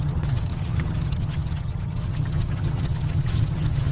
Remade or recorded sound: remade